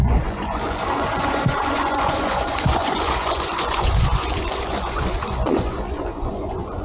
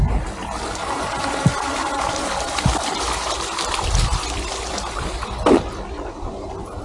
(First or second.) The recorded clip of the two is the second